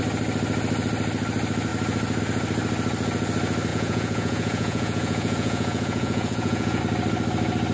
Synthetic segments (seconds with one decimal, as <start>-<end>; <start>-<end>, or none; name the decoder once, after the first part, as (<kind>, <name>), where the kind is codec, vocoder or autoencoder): 3.7-6.8 (vocoder, Vocos)